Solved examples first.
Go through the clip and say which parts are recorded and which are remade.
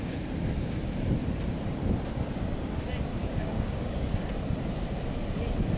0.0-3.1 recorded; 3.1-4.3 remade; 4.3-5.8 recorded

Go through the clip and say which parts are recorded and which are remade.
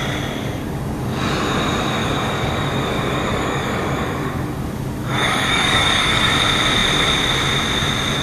0.0-0.4 recorded; 0.4-1.3 remade; 1.3-2.0 recorded; 2.0-6.3 remade; 6.3-8.2 recorded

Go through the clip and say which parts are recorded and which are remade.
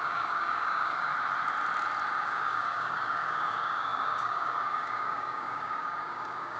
0.0-1.1 remade; 1.1-2.2 recorded; 2.2-6.6 remade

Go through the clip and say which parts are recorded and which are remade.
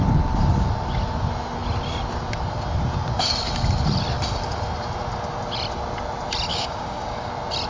0.0-6.5 recorded; 6.5-7.3 remade; 7.3-7.7 recorded